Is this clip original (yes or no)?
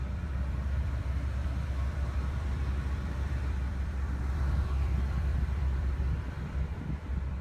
no